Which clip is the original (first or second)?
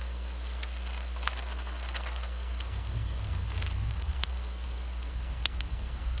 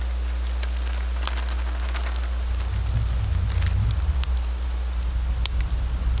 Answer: second